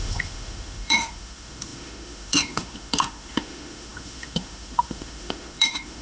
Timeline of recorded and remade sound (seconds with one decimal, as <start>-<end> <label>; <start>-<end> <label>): 0.0-6.0 remade